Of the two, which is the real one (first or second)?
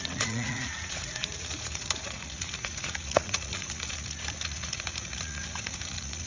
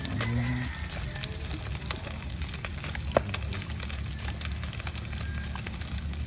second